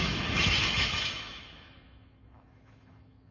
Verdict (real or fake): fake